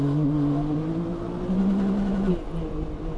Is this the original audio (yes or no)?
yes